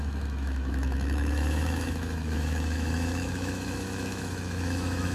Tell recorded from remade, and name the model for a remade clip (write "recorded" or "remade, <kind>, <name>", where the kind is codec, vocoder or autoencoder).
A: remade, autoencoder, DAC-VAE